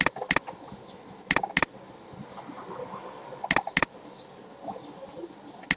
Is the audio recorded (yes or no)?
yes